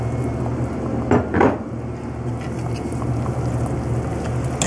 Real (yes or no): yes